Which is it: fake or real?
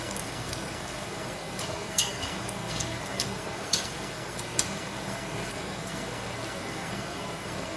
fake